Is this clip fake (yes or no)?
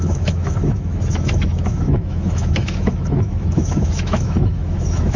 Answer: yes